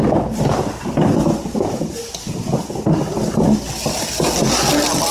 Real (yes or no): yes